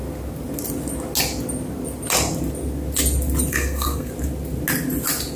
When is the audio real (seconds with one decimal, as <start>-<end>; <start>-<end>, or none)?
0.0-3.5; 4.1-5.4